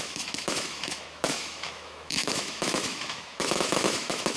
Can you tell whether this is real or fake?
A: fake